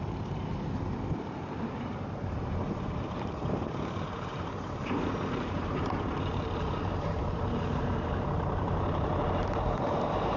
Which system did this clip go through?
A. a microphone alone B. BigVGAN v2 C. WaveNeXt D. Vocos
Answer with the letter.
B